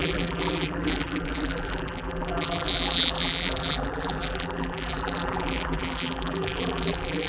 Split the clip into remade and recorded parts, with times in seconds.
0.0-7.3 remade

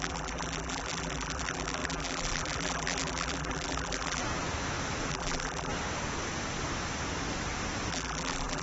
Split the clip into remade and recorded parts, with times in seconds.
0.0-4.2 remade; 4.2-5.1 recorded; 5.1-5.7 remade; 5.7-7.9 recorded; 7.9-8.6 remade

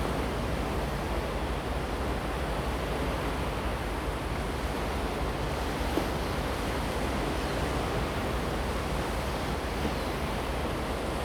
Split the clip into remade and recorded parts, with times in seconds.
0.0-11.2 recorded

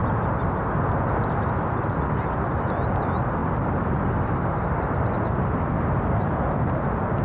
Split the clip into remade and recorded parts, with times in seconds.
0.0-3.4 recorded; 3.4-5.7 remade; 5.7-7.2 recorded

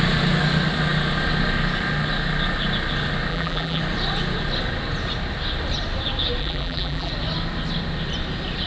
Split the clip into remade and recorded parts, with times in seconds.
0.0-3.3 recorded; 3.3-3.8 remade; 3.8-6.4 recorded; 6.4-7.1 remade; 7.1-8.7 recorded

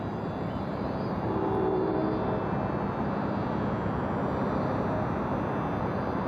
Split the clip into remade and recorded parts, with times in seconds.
0.0-2.0 remade; 2.0-5.8 recorded; 5.8-6.3 remade